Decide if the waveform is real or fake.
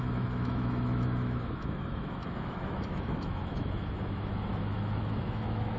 fake